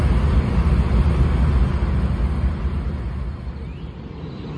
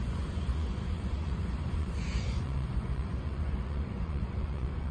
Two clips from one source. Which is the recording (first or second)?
first